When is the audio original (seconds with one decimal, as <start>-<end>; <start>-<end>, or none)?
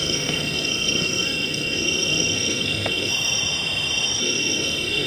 3.1-4.2